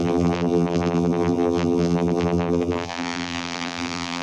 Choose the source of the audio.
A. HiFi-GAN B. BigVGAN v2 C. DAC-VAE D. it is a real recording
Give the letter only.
B